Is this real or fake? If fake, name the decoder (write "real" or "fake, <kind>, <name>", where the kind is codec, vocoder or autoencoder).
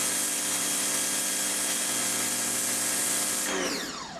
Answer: real